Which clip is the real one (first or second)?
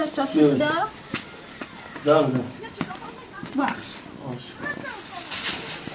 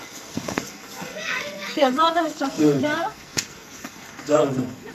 first